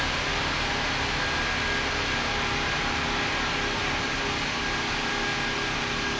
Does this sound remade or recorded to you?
recorded